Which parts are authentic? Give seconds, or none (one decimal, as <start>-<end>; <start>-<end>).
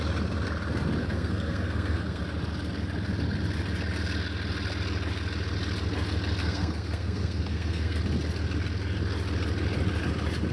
0.0-1.0; 2.2-6.4; 8.0-10.5